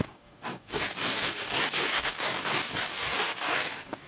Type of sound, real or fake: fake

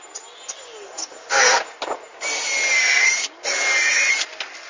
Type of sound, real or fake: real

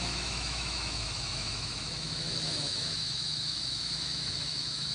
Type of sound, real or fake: fake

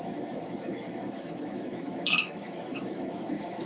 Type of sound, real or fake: fake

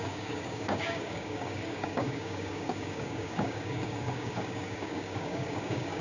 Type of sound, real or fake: fake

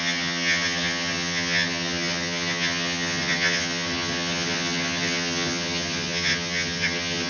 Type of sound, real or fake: fake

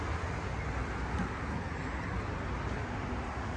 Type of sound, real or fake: real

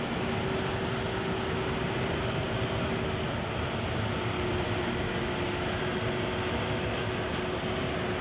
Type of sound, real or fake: real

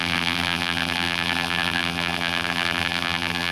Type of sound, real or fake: fake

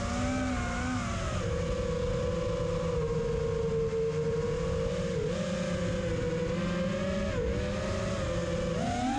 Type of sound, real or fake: real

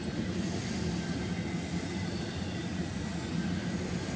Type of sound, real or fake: real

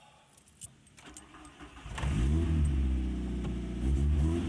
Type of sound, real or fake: real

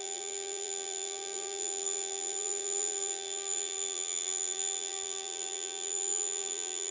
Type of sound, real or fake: fake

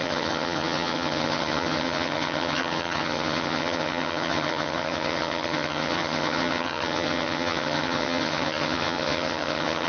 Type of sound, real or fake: fake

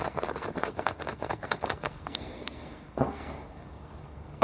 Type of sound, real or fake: fake